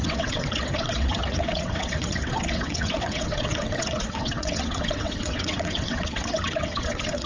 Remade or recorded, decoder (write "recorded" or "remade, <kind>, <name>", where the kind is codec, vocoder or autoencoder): remade, vocoder, WaveNeXt